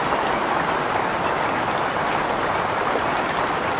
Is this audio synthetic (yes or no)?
no